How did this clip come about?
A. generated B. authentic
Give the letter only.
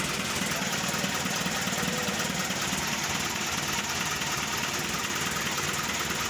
B